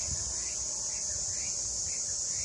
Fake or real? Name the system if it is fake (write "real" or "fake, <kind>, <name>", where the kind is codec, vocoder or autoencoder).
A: real